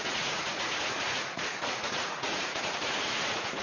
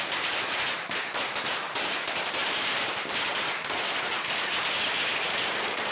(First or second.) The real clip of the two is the second